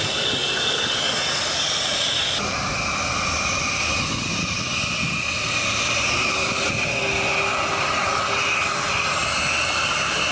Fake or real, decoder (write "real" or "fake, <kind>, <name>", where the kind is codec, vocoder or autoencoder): real